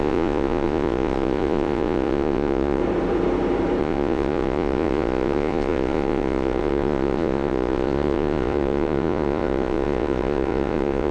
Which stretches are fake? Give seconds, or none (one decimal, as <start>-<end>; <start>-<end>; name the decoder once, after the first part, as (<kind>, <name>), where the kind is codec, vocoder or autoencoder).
0.0-2.8 (vocoder, Vocos); 3.8-11.1

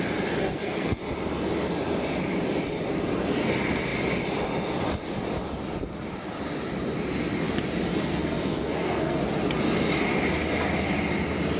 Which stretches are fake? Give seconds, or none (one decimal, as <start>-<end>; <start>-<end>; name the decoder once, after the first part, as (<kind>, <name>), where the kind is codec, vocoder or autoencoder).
0.4-1.0 (codec, SNAC); 7.9-9.2

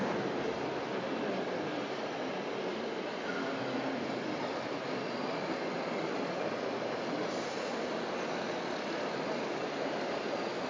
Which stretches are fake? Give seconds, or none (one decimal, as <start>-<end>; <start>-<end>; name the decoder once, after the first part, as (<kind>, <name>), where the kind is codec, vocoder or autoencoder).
none